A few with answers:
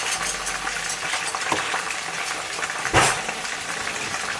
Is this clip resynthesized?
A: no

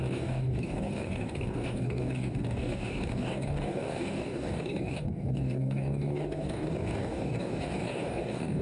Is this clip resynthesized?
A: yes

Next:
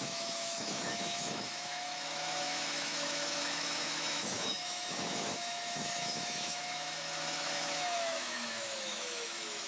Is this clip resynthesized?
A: yes